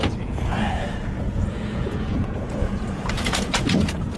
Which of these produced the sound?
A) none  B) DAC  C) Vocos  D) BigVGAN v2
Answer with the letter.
C